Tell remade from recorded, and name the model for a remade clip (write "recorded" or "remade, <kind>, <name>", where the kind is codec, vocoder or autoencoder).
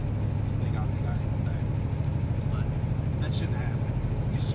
recorded